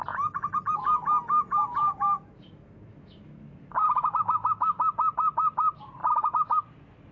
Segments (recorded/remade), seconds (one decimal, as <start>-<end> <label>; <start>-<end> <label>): 0.0-1.8 recorded; 1.8-4.8 remade; 4.8-7.1 recorded